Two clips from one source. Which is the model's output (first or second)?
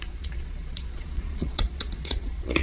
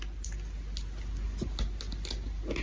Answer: first